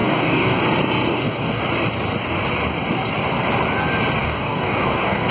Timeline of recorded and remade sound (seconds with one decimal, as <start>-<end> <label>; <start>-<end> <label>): 0.0-0.6 remade; 0.6-1.1 recorded; 1.1-1.6 remade; 1.6-4.2 recorded; 4.2-5.3 remade